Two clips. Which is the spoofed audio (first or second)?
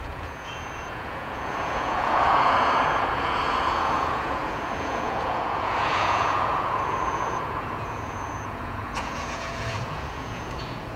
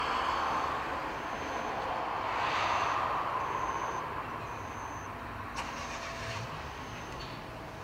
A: first